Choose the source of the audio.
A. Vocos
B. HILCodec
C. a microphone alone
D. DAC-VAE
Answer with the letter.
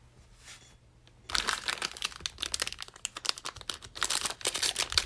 C